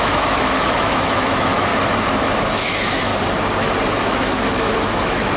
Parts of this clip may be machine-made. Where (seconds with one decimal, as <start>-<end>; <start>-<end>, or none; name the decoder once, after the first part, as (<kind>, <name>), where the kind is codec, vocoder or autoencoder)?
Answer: 0.0-1.7 (autoencoder, DAC-VAE); 2.4-3.1; 4.0-5.4